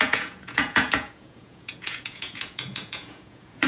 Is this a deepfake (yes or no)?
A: yes